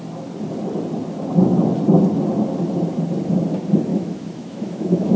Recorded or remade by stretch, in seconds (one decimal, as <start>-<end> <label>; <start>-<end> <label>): 0.0-3.9 recorded; 3.9-5.2 remade